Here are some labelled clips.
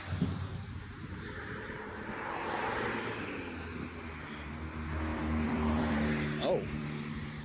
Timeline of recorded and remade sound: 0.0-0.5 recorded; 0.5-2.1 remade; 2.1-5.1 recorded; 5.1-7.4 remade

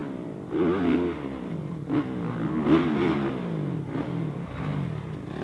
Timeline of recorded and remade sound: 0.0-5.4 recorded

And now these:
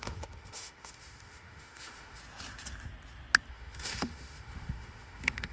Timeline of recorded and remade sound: 0.0-2.2 remade; 2.2-3.5 recorded; 3.5-5.5 remade

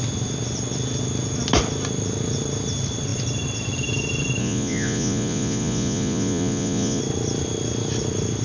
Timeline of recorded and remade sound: 0.0-4.4 recorded; 4.4-7.0 remade; 7.0-8.4 recorded